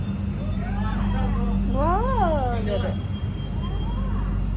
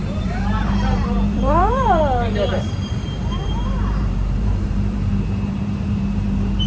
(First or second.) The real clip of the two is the first